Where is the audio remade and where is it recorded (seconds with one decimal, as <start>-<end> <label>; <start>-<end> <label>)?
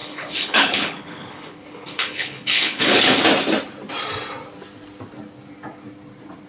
0.0-3.2 remade; 3.2-6.5 recorded